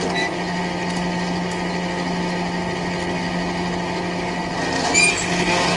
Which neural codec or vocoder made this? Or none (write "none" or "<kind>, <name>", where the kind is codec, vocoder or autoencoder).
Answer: none